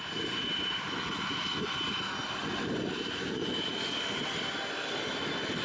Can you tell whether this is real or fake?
real